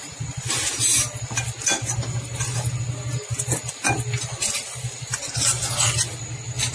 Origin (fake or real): real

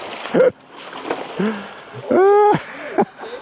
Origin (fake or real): real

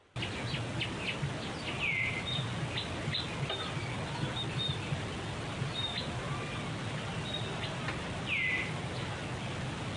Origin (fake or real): real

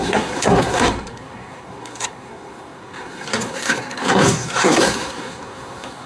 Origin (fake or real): fake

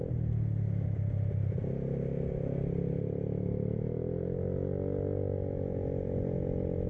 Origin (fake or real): real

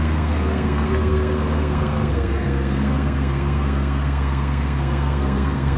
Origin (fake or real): fake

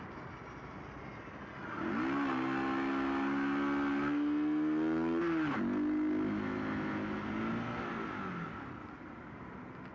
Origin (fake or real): real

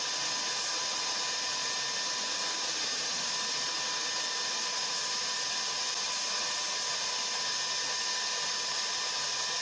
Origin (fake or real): real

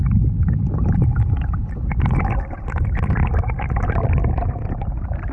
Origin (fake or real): real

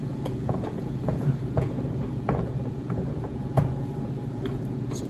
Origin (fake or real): fake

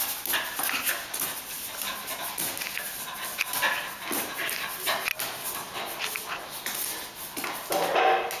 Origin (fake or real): real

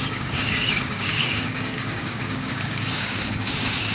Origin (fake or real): fake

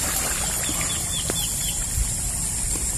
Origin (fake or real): real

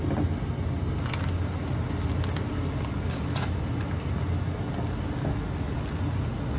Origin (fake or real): real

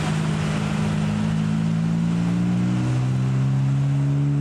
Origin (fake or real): real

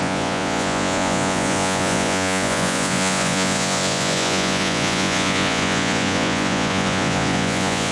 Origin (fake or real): fake